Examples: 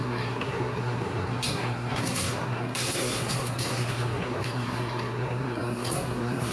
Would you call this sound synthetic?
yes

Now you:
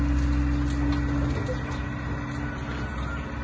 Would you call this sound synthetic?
no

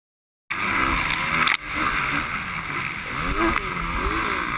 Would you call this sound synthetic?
no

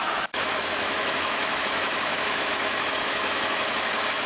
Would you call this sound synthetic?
yes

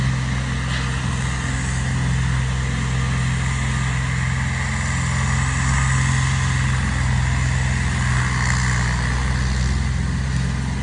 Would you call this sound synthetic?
no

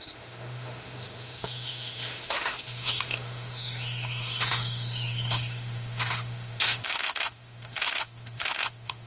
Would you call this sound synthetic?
yes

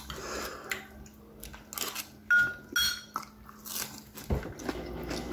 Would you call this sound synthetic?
no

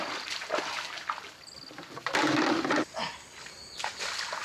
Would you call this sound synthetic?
no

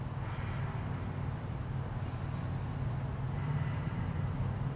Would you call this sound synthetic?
no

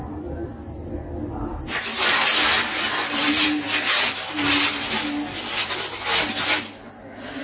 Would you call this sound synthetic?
no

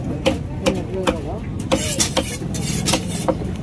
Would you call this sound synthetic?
no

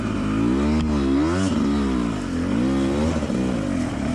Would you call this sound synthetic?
no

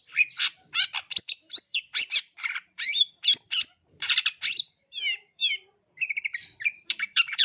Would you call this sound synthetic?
yes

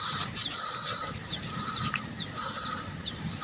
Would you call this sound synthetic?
yes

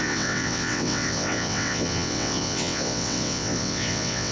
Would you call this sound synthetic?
yes